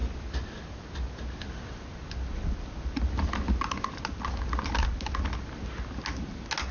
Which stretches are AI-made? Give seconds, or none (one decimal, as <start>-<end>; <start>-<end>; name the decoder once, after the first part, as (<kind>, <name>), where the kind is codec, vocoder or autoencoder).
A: none